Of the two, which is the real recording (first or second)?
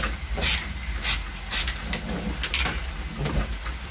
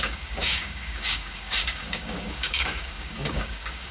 first